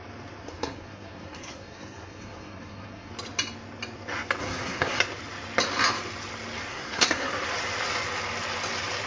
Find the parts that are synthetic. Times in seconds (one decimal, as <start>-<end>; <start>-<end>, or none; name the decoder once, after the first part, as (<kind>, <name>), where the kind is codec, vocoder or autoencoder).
0.4-3.1 (codec, SNAC); 4.4-5.0; 6.7-7.3